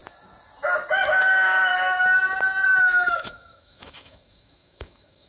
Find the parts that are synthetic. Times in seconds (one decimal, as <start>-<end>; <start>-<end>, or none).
1.2-1.7; 2.8-5.3